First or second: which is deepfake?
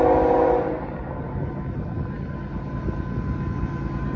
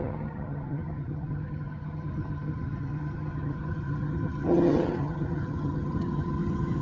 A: second